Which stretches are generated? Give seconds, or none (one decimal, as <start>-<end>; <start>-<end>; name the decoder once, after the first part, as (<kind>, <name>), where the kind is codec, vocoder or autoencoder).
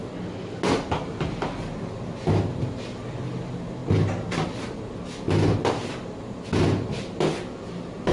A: none